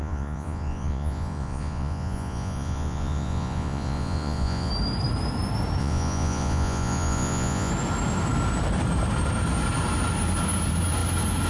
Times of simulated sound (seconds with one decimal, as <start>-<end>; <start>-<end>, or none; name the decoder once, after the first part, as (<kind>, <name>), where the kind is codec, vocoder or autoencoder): 0.0-4.7 (vocoder, Vocos); 5.8-7.7